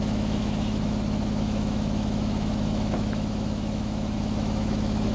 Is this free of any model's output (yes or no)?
no